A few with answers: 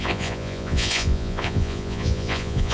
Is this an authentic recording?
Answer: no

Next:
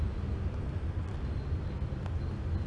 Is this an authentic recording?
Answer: yes